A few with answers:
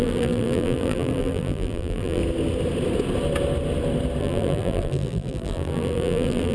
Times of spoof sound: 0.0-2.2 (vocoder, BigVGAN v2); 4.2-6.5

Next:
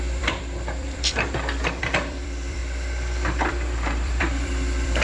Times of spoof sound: 0.0-2.6 (vocoder, BigVGAN v2); 3.5-5.0

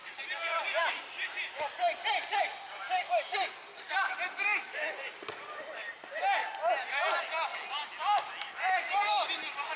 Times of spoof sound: 0.0-6.4 (vocoder, BigVGAN v2); 8.2-9.8

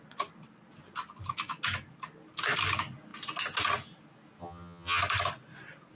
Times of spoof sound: 4.4-5.0 (vocoder, HiFi-GAN)

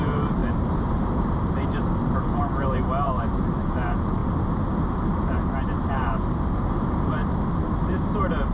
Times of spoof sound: 0.0-4.2 (vocoder, BigVGAN v2); 5.9-7.2; 7.8-8.5

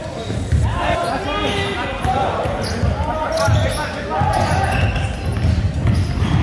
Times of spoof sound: none